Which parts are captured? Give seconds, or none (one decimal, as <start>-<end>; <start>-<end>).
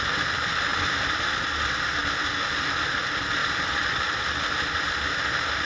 0.0-0.7; 1.3-3.4; 5.0-5.7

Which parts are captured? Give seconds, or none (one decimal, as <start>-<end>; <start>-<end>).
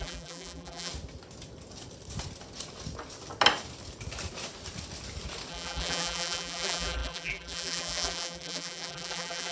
0.9-5.5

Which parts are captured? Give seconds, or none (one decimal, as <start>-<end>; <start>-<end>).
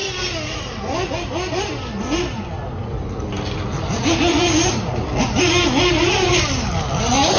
0.0-2.8; 3.7-4.3; 5.4-7.4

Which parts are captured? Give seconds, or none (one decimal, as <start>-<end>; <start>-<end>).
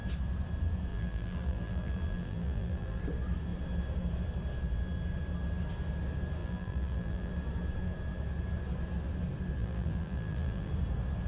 0.0-0.9; 3.0-6.4; 7.3-9.6; 10.7-11.3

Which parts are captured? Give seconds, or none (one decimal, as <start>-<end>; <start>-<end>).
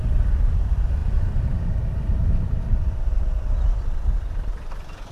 0.0-5.1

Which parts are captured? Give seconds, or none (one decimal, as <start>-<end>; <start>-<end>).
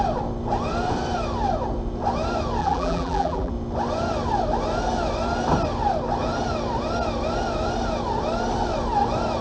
0.0-2.6; 3.5-9.4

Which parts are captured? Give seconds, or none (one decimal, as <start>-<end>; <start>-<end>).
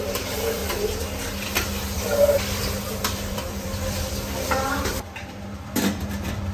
0.6-1.7